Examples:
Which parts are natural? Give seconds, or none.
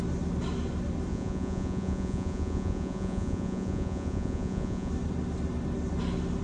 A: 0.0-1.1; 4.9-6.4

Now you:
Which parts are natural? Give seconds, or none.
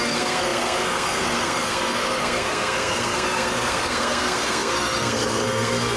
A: none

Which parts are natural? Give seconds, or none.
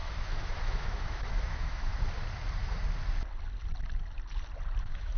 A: 1.9-4.8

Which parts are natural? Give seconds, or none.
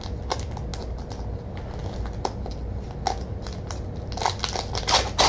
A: 0.0-5.3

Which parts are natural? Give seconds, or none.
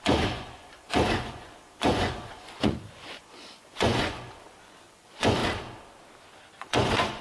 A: 5.4-6.6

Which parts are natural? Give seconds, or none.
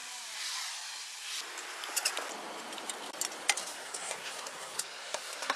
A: 0.0-3.6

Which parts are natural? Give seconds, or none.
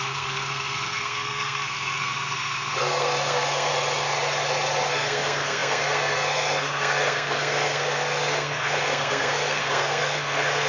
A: 3.7-4.9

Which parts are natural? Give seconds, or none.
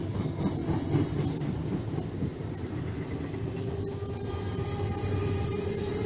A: 0.0-4.7; 5.6-6.1